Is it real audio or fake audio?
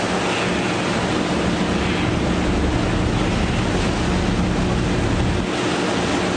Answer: real